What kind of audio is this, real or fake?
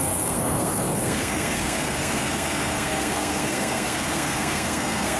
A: fake